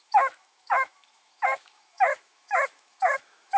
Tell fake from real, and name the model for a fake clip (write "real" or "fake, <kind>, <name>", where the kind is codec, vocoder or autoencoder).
fake, autoencoder, DAC-VAE